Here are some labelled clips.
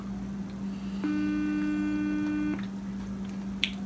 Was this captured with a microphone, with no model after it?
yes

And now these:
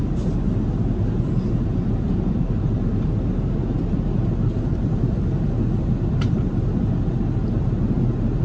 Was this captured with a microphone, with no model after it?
yes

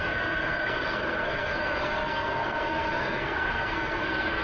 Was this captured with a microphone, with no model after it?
no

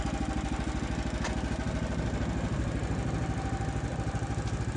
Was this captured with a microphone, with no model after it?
yes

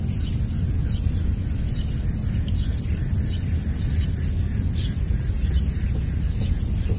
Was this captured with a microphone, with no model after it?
yes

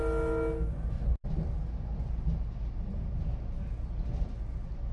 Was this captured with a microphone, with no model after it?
yes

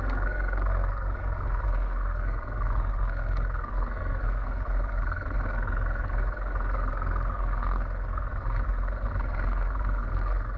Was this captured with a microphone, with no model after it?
no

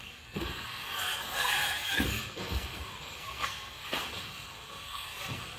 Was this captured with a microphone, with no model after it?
no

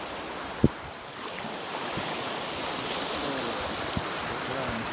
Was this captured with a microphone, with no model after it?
yes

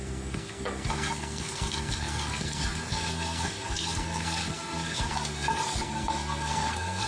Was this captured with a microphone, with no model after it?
no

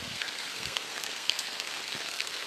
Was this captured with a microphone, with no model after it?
no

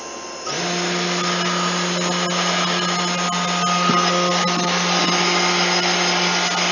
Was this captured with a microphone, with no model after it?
yes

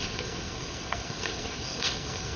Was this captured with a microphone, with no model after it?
no